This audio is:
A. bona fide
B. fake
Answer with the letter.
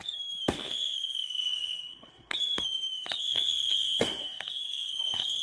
B